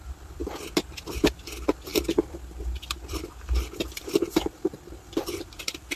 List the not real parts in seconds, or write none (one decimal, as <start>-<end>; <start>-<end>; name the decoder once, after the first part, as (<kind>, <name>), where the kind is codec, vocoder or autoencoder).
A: 0.0-0.4 (vocoder, BigVGAN v2); 1.1-6.0